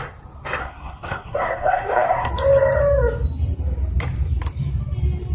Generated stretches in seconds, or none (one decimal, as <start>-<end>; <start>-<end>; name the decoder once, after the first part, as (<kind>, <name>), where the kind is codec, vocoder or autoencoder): 0.6-2.3 (codec, SNAC)